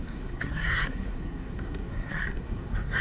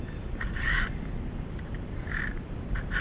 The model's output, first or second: first